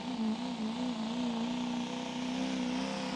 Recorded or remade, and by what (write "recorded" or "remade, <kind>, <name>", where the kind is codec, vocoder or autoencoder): recorded